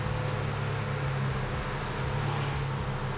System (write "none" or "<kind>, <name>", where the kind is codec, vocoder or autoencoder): none